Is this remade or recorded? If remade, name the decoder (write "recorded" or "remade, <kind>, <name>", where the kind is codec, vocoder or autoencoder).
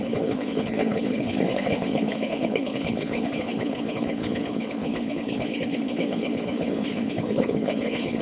remade, codec, HILCodec